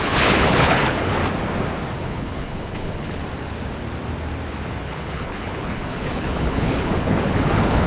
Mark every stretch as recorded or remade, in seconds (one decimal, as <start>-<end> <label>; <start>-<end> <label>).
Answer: 0.0-1.2 remade; 1.2-2.0 recorded; 2.0-3.2 remade; 3.2-4.8 recorded; 4.8-7.9 remade